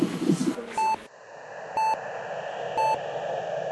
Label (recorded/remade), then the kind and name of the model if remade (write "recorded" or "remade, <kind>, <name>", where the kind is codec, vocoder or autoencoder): recorded